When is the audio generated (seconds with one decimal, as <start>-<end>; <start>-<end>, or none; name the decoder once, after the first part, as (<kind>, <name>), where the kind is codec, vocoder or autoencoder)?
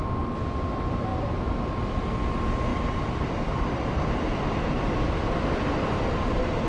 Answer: none